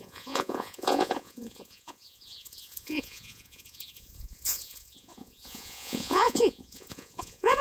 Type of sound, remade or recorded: remade